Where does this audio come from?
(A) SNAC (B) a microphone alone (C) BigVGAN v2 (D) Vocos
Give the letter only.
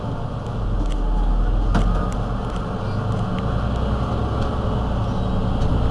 B